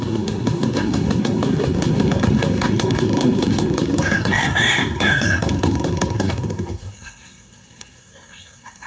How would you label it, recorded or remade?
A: remade